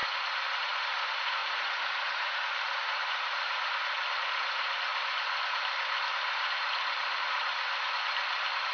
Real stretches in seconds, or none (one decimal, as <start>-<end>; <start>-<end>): 0.0-0.8; 4.9-7.2